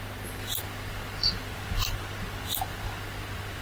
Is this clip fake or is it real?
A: real